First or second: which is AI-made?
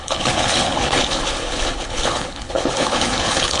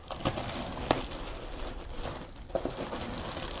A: first